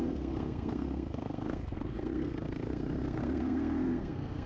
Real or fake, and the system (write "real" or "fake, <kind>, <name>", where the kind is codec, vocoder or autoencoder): fake, codec, SNAC